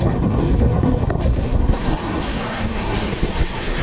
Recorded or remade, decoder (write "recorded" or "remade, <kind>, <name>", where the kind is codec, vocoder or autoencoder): remade, codec, SNAC